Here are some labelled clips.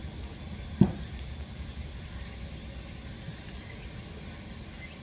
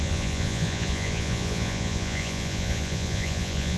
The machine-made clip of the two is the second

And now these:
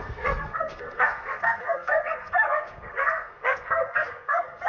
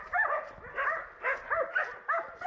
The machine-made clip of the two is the first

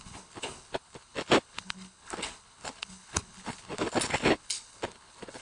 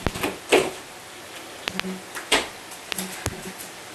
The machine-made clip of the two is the first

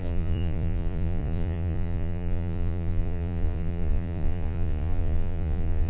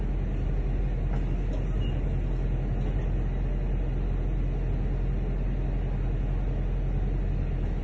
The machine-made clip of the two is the first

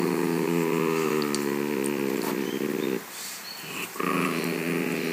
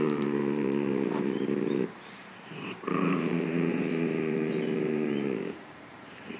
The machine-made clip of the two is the second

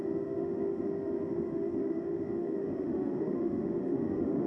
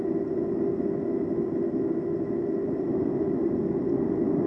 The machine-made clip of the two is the first